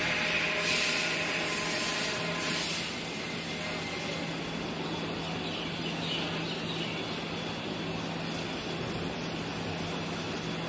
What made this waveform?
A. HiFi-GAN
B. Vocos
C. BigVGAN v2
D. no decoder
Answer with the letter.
D